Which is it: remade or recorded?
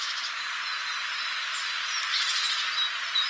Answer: recorded